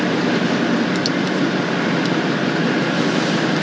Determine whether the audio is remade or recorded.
recorded